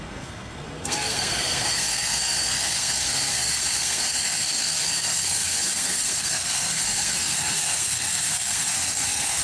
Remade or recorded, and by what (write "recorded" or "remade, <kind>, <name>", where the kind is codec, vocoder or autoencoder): remade, codec, SNAC